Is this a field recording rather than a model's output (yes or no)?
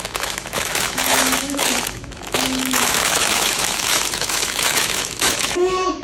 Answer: no